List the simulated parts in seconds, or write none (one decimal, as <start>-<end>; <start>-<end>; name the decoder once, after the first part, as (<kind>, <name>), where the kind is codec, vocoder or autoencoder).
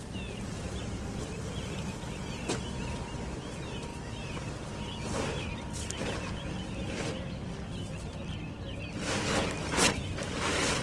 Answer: none